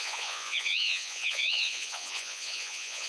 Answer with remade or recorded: remade